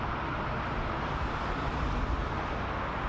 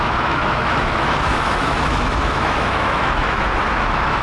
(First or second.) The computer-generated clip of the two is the second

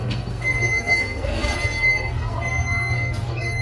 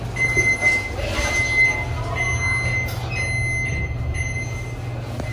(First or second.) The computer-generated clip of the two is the first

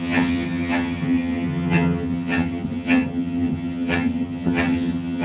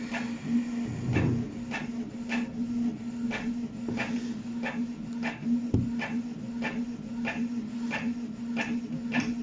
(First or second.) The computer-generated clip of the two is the first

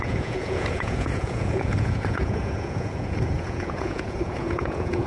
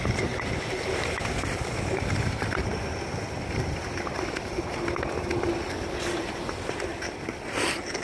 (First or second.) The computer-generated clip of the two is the first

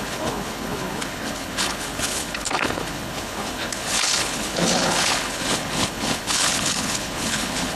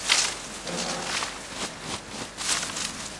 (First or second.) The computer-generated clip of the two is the first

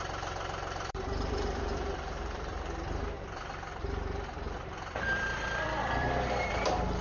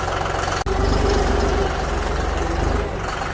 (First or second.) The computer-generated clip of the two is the first